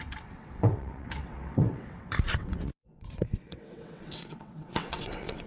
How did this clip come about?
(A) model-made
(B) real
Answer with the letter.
A